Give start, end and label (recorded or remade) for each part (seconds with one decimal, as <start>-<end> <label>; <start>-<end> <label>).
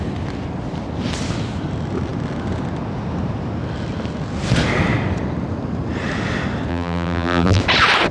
0.0-6.7 recorded; 6.7-7.6 remade; 7.6-8.1 recorded